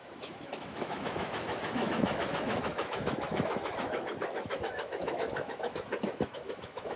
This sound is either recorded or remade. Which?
remade